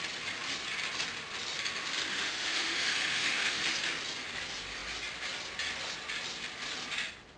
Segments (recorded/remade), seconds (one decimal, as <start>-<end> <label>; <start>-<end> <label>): 0.0-2.1 recorded; 2.1-3.6 remade; 3.6-7.4 recorded